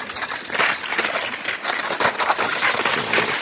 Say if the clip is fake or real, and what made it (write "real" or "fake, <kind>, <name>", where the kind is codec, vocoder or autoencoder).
real